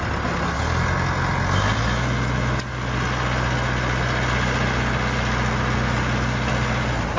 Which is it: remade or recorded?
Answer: recorded